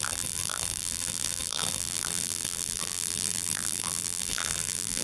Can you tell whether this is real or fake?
fake